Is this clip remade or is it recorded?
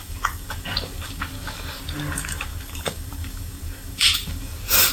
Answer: remade